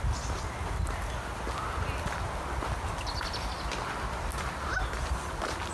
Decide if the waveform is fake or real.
real